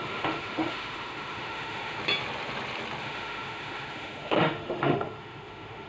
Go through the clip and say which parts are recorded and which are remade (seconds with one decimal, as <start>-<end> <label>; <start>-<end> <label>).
0.0-2.0 remade; 2.0-3.0 recorded; 3.0-5.9 remade